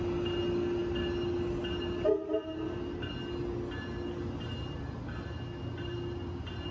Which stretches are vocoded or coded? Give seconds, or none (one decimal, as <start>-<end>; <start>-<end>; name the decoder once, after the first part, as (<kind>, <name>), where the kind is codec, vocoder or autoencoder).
none